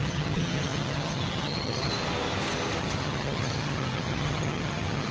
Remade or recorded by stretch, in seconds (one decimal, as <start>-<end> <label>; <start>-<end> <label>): 0.0-1.9 remade; 1.9-2.8 recorded; 2.8-5.1 remade